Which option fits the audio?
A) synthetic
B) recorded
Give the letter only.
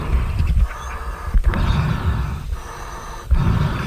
B